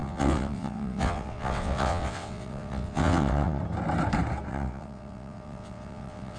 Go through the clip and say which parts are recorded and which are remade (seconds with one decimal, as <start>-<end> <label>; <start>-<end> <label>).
0.0-3.6 remade; 3.6-4.5 recorded; 4.5-6.4 remade